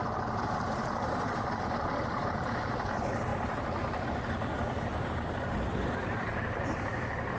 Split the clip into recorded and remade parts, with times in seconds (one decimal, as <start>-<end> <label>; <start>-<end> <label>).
0.0-2.9 remade; 2.9-4.9 recorded; 4.9-6.7 remade; 6.7-7.4 recorded